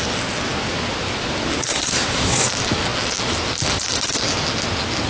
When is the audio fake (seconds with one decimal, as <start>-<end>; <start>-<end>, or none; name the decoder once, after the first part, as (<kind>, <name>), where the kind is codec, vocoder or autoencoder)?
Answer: 1.6-2.5 (codec, SNAC)